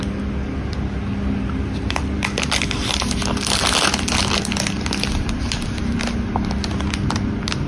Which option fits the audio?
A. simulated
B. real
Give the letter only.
B